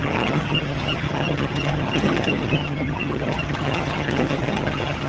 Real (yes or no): no